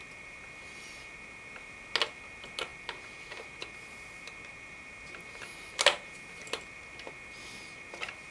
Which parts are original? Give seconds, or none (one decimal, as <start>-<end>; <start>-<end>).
0.0-8.3